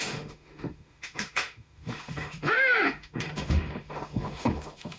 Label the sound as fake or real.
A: fake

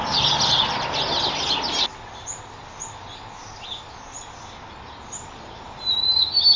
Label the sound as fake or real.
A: real